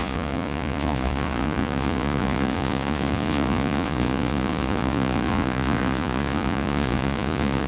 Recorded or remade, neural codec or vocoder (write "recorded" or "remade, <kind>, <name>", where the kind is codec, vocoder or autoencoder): remade, vocoder, Vocos